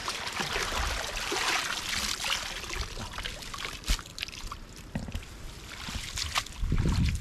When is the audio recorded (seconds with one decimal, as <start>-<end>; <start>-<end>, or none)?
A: 0.0-7.2